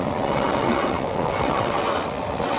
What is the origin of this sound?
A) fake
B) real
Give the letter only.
A